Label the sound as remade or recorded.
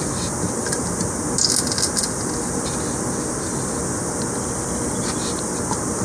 recorded